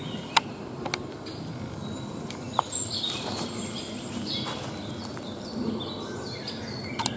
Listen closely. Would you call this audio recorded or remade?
recorded